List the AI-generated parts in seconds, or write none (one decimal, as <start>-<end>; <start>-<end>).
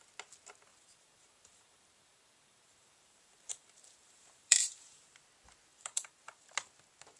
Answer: 0.7-5.0; 5.7-6.5